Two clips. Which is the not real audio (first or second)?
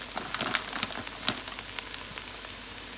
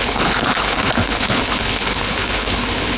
second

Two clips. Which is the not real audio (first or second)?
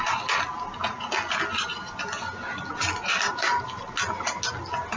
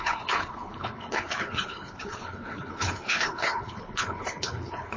second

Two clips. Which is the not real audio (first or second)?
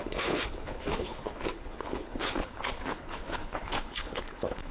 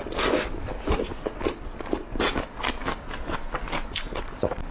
first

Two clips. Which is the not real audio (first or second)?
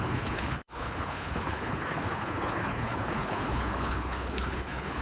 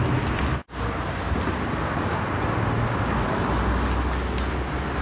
first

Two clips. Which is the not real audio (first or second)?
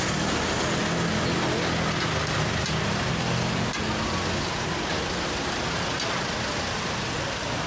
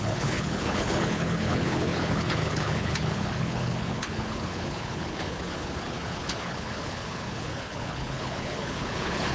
second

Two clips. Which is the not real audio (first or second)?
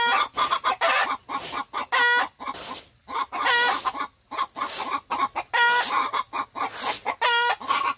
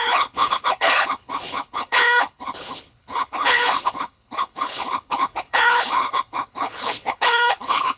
second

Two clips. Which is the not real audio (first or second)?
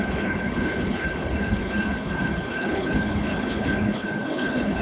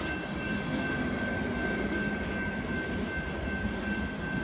first